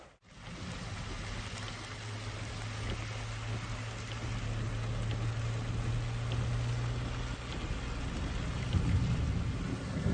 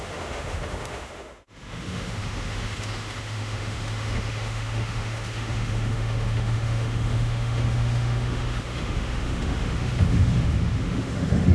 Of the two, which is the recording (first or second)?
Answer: first